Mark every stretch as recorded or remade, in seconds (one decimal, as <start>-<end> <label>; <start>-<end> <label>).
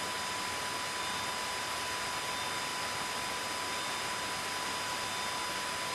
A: 0.0-5.9 recorded